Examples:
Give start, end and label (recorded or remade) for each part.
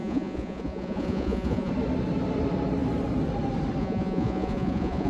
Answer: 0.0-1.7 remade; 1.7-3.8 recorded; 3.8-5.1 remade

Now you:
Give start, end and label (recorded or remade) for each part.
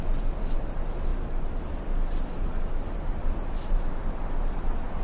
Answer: 0.0-5.0 recorded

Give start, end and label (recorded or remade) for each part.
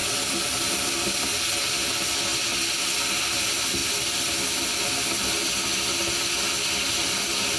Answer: 0.0-7.6 recorded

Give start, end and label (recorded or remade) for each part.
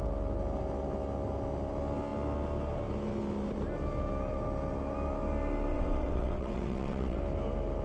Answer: 0.0-5.7 recorded; 5.7-7.2 remade; 7.2-7.8 recorded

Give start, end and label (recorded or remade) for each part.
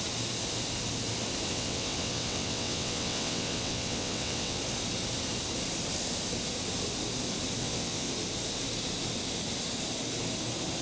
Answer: 0.0-1.5 recorded; 1.5-4.6 remade; 4.6-7.6 recorded; 7.6-8.1 remade; 8.1-10.8 recorded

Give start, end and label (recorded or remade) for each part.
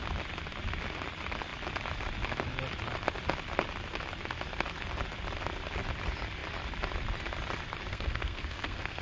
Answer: 0.0-7.9 recorded; 7.9-9.0 remade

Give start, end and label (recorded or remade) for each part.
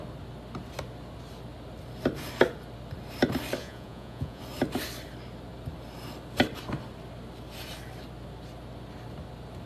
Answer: 0.0-3.6 recorded; 3.6-4.4 remade; 4.4-9.7 recorded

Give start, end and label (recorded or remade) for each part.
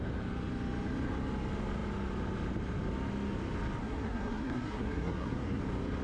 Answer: 0.0-3.8 recorded; 3.8-5.6 remade; 5.6-6.0 recorded